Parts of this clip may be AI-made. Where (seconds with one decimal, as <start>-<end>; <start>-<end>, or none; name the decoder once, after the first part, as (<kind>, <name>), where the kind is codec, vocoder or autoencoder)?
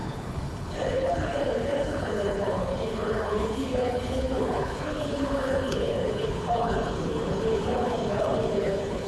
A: 0.0-9.1 (codec, HILCodec)